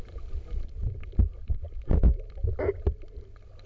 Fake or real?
real